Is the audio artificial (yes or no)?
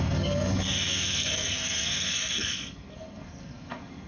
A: yes